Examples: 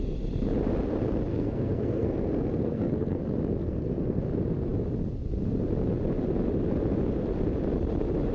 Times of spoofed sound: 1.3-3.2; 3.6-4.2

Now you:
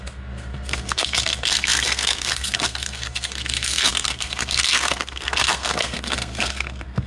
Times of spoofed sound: 0.0-7.1

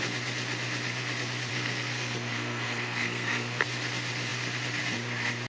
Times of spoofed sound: 1.5-3.6

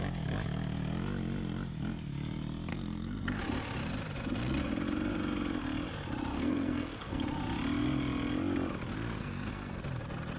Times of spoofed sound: 2.7-3.4; 6.3-7.2; 9.2-9.8

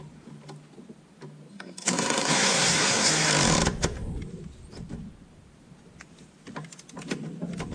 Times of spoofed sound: 1.5-3.3

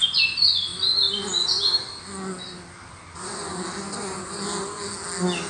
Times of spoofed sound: none

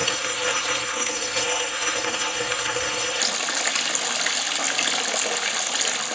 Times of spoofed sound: 0.0-3.2

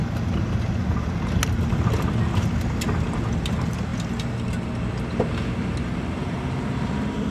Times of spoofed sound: none